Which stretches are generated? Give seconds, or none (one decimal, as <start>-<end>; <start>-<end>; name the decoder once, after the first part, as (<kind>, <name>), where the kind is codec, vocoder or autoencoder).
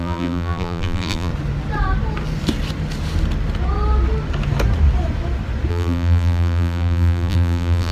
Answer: 0.0-1.3 (vocoder, BigVGAN v2); 5.7-7.9